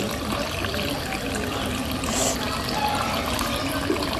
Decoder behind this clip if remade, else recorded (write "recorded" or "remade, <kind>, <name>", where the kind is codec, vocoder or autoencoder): recorded